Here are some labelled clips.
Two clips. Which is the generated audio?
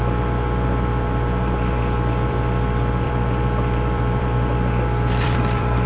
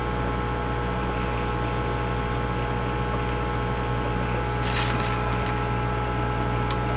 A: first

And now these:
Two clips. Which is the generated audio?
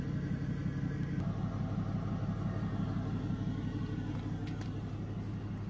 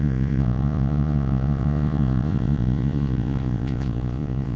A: second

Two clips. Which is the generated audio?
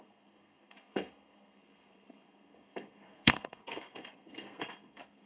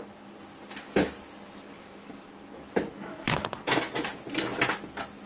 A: first